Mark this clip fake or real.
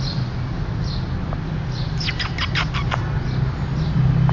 real